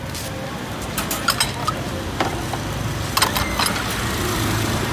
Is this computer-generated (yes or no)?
no